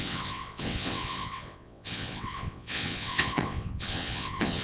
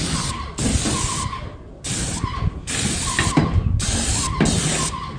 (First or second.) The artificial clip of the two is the first